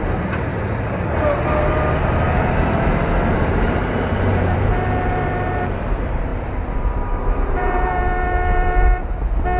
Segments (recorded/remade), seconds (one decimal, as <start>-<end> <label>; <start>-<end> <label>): 0.0-0.5 remade; 0.5-3.3 recorded; 3.3-6.3 remade; 6.3-6.8 recorded; 6.8-9.0 remade; 9.0-9.6 recorded